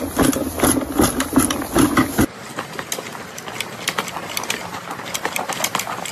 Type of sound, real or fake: real